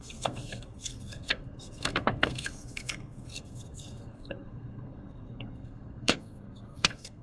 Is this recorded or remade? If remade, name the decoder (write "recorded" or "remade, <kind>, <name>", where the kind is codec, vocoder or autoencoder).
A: remade, codec, SNAC